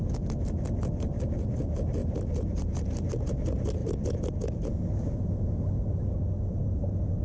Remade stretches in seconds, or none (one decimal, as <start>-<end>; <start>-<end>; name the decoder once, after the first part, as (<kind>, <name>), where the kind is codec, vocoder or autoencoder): 2.0-3.0 (vocoder, BigVGAN v2); 3.8-5.3